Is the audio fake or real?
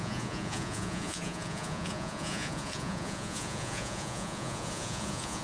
fake